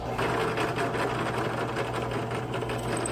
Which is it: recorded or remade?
recorded